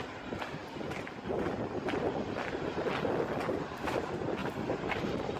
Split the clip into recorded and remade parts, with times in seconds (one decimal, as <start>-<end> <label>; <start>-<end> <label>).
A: 0.0-5.4 recorded